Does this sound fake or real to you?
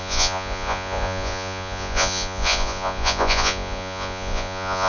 fake